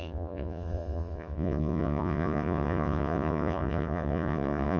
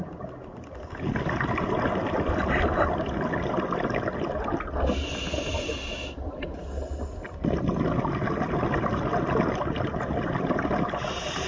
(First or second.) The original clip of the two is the second